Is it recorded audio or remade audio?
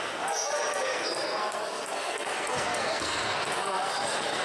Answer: remade